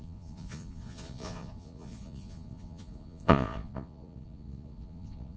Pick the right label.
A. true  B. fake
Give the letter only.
B